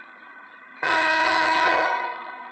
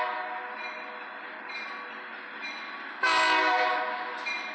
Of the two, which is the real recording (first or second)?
second